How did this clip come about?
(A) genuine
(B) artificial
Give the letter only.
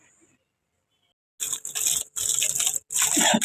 A